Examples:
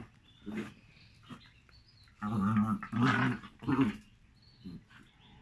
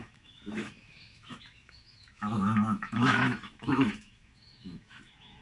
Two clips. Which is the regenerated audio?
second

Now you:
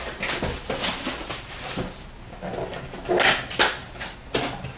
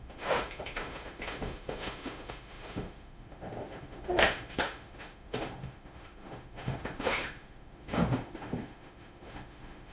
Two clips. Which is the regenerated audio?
second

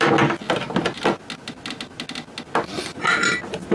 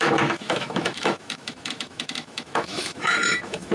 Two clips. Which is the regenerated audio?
second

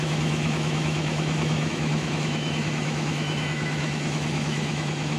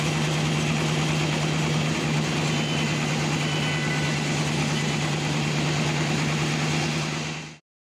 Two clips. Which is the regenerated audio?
first